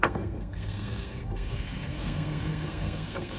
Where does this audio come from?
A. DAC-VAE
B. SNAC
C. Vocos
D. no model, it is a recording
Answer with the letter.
B